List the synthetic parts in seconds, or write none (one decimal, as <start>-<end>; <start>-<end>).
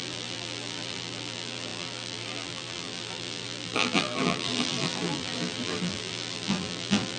0.0-7.2